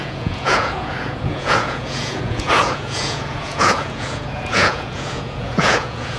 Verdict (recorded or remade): remade